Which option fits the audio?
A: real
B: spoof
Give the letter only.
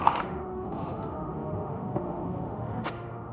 B